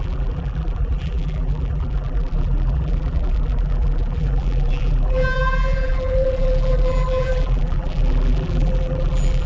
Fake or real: fake